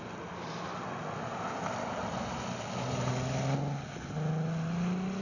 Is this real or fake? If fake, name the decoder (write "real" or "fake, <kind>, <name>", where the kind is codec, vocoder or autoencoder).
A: real